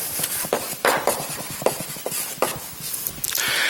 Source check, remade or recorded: recorded